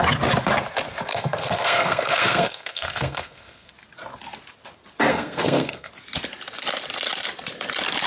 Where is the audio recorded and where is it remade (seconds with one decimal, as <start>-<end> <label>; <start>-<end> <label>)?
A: 0.0-1.1 recorded; 1.1-3.7 remade; 3.7-5.1 recorded; 5.1-5.9 remade; 5.9-8.1 recorded